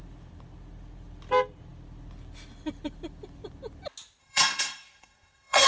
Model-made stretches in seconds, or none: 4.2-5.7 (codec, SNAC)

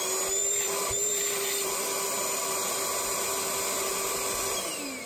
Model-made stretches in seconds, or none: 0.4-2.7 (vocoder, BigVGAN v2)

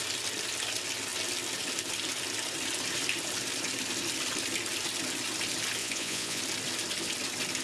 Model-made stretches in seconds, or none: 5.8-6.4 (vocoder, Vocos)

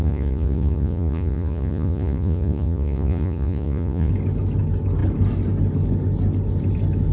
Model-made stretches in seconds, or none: 0.0-4.1 (vocoder, Vocos)

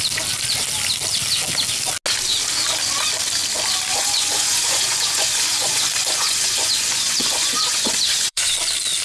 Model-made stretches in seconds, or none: 3.9-8.5 (vocoder, Vocos)